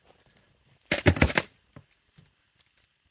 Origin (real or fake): fake